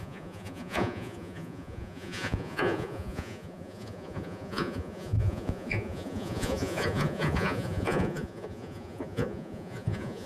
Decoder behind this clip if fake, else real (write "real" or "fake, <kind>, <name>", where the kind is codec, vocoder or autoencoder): fake, vocoder, Vocos